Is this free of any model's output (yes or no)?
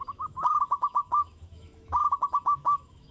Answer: no